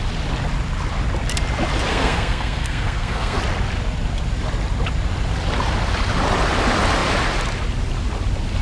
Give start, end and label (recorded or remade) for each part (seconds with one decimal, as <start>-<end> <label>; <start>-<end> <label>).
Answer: 0.0-1.9 recorded; 1.9-3.4 remade; 3.4-8.6 recorded